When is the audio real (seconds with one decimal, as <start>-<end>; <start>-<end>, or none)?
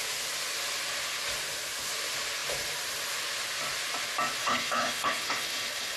0.0-4.4